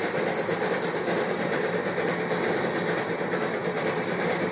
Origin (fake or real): real